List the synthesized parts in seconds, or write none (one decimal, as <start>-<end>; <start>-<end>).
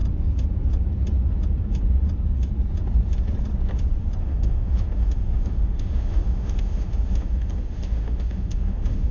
4.2-9.1